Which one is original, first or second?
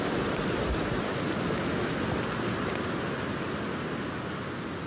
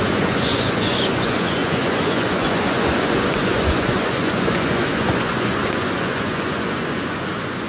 first